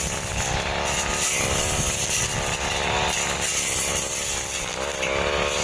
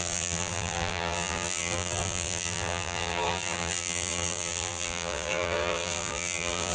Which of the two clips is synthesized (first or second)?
second